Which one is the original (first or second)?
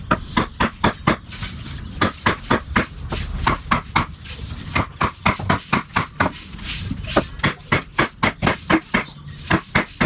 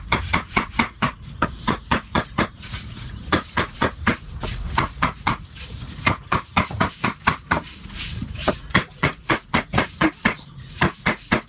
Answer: first